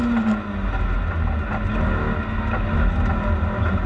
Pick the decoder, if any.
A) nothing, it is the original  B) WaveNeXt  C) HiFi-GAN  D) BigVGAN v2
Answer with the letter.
A